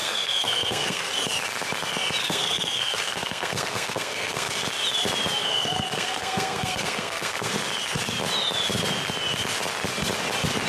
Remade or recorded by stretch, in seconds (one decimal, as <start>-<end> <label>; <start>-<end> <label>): 0.0-1.1 remade; 1.1-2.2 recorded; 2.2-4.5 remade; 4.5-5.4 recorded; 5.4-7.5 remade; 7.5-10.7 recorded